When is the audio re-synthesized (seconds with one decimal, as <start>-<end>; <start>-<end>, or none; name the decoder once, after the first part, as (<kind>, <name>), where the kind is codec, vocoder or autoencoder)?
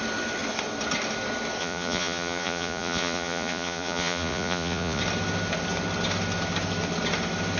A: 1.6-5.0 (vocoder, Vocos)